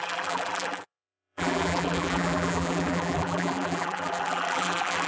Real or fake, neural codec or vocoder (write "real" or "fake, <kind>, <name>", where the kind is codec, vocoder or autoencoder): fake, vocoder, BigVGAN v2